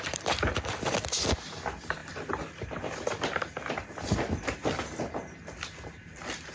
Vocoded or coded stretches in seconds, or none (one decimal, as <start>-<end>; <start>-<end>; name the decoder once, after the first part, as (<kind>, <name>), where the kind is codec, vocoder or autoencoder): none

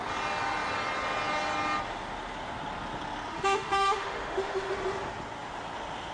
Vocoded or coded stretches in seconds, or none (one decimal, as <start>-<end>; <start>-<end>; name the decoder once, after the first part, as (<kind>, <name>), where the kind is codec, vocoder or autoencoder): 3.3-4.7 (autoencoder, DAC-VAE)

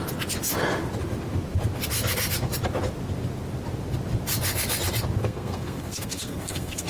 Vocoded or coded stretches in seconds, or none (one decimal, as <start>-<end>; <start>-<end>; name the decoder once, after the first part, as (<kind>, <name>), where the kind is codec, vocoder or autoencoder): 5.2-6.9 (codec, SNAC)

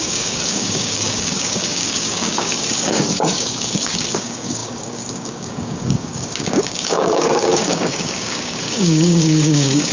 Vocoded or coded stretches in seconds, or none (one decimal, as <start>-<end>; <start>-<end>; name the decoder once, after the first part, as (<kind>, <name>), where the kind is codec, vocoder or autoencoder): 0.0-9.9 (codec, DAC)

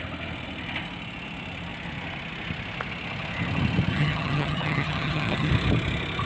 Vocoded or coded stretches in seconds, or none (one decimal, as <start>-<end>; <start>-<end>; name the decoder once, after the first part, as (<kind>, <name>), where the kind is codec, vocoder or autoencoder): 3.9-5.5 (vocoder, HiFi-GAN)